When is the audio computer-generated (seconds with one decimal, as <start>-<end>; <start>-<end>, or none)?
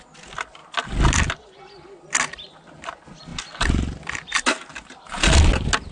none